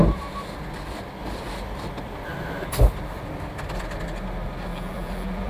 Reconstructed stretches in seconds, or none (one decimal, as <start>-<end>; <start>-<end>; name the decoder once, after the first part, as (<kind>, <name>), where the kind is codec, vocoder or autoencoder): 4.7-5.5 (vocoder, BigVGAN v2)